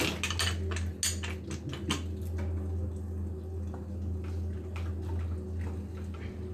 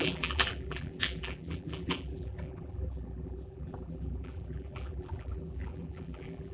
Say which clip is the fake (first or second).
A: second